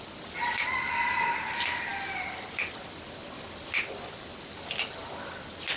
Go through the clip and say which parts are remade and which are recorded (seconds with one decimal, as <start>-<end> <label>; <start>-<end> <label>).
0.0-5.8 recorded

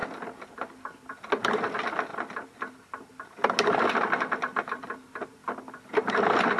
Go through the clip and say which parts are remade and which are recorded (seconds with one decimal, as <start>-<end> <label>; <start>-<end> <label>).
0.0-6.6 recorded

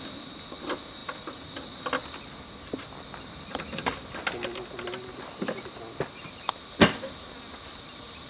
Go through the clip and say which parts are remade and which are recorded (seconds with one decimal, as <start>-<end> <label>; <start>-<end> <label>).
0.0-8.3 recorded

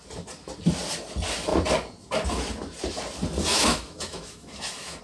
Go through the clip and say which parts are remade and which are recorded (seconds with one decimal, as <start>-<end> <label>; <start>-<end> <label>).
0.0-3.5 recorded; 3.5-5.0 remade

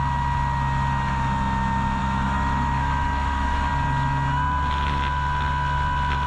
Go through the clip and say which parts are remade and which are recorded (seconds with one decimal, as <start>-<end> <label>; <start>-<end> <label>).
0.0-2.0 recorded; 2.0-3.7 remade; 3.7-6.3 recorded

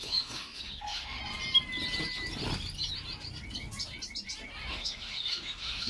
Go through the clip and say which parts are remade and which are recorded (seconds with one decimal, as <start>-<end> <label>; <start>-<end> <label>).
0.0-1.2 remade; 1.2-4.7 recorded; 4.7-5.9 remade

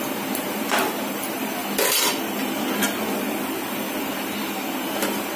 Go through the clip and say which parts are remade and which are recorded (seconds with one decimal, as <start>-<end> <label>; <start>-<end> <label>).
0.0-5.4 recorded